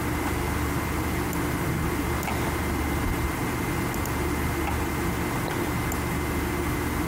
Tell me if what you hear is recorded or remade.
recorded